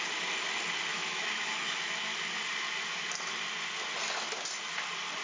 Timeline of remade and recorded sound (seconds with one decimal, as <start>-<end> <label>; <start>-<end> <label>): 0.0-0.9 recorded; 0.9-1.9 remade; 1.9-5.2 recorded